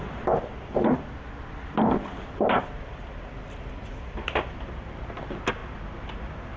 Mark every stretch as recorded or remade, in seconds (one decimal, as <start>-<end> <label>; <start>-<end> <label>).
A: 0.0-6.6 recorded